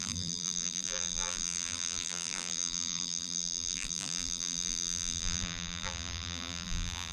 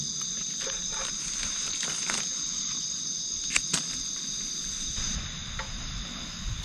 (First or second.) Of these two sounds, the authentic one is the second